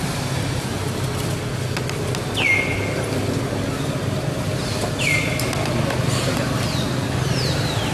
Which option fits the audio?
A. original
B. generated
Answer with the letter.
A